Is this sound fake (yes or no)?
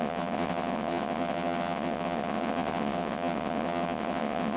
yes